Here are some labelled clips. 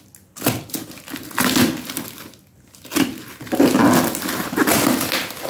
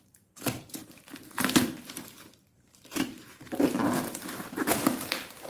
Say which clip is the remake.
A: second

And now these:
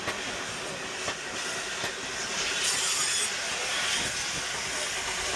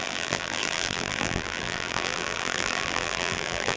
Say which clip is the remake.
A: second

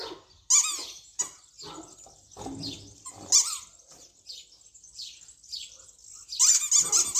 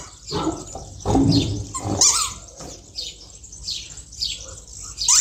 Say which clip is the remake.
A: second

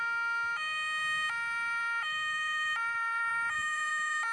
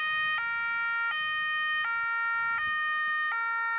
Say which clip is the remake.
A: first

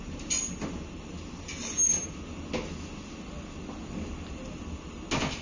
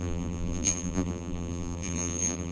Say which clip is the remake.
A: second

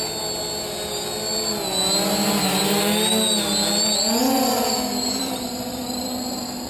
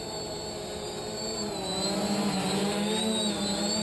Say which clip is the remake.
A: second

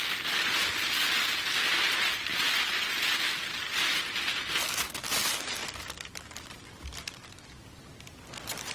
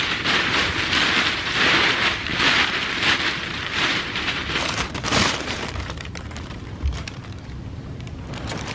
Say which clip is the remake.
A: second